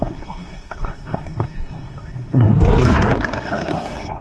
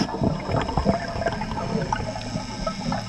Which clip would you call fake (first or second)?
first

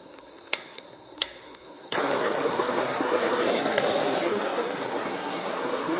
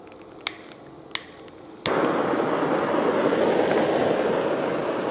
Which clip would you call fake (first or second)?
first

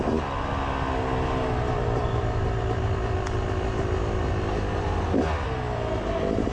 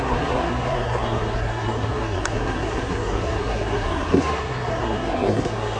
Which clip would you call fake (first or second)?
second